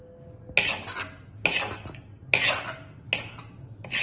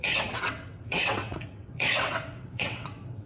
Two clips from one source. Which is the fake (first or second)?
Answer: second